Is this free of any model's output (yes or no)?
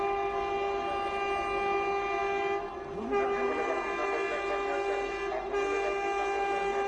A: yes